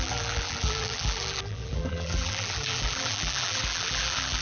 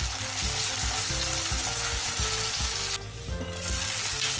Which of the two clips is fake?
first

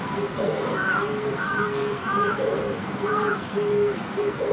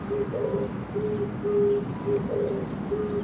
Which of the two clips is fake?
first